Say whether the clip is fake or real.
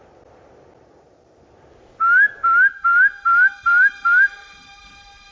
real